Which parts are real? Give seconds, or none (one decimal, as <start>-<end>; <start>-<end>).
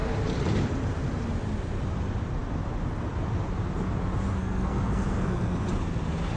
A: 0.0-4.4; 5.7-6.4